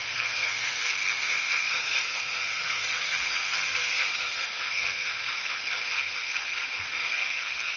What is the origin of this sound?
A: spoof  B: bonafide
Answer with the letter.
A